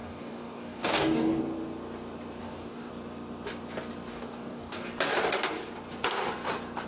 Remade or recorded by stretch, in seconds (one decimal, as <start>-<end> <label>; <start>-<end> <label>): 0.0-1.4 remade; 1.4-2.4 recorded; 2.4-2.9 remade; 2.9-4.1 recorded; 4.1-4.9 remade; 4.9-6.9 recorded